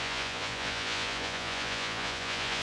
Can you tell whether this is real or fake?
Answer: fake